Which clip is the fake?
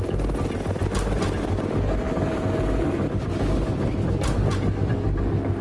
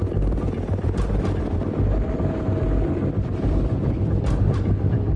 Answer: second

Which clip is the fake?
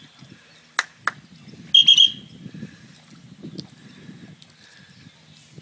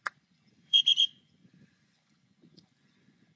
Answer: second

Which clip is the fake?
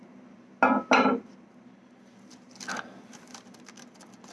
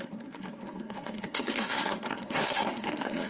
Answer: second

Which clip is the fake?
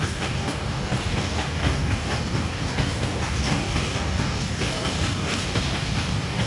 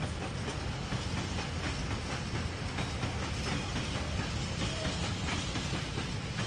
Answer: first